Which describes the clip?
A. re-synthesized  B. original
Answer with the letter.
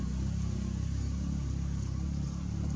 B